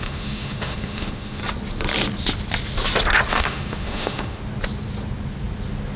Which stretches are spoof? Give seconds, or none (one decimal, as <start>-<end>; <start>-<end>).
0.0-1.4; 3.3-4.4